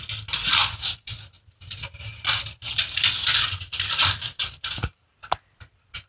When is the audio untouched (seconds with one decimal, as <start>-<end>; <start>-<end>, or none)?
0.0-6.1